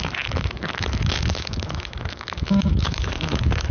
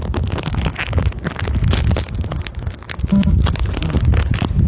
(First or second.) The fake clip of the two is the first